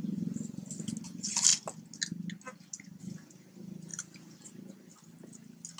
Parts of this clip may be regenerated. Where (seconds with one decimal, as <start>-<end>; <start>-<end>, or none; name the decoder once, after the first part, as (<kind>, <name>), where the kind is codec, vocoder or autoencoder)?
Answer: none